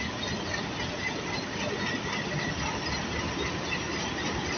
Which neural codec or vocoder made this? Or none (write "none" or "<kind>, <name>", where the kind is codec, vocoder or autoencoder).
none